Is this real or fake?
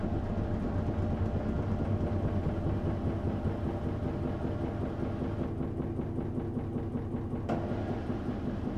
real